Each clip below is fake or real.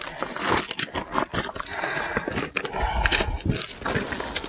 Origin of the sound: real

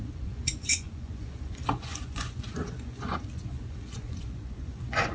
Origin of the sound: fake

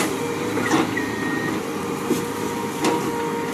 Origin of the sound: real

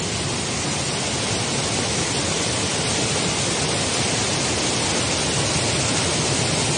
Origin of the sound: real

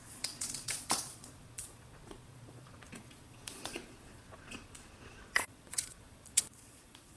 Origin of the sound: fake